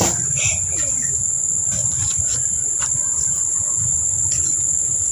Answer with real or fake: fake